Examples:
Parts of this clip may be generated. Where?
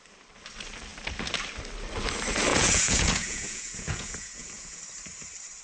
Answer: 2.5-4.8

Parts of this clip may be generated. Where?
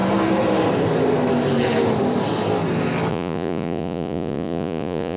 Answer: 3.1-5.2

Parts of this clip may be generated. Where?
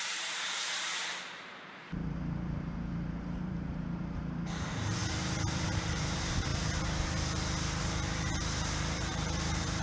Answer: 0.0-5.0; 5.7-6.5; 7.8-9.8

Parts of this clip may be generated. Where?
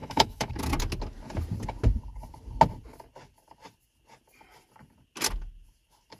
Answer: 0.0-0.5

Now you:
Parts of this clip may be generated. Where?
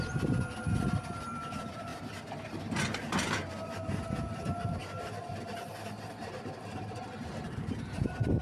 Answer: 0.0-8.4